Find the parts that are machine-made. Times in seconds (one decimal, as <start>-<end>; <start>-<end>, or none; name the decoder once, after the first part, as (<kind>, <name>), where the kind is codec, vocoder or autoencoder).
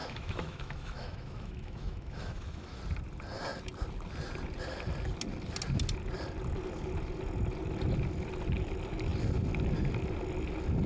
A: 0.0-2.8 (autoencoder, DAC-VAE)